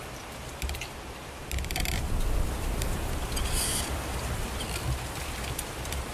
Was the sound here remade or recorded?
remade